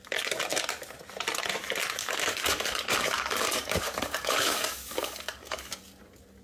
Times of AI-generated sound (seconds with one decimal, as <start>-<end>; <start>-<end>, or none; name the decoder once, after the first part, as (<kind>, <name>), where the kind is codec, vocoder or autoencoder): 2.0-5.8 (codec, DAC)